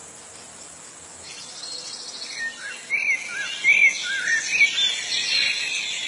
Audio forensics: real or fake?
real